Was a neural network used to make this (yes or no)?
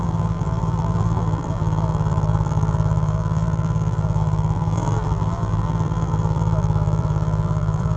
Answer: yes